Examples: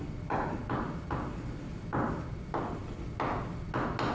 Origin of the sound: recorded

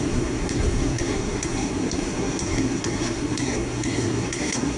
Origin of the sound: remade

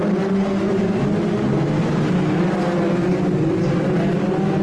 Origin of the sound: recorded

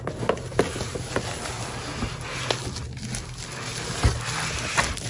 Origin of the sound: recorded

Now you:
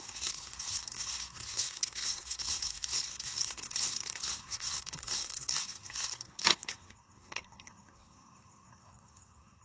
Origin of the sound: remade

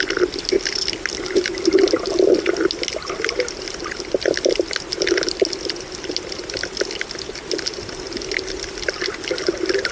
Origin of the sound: recorded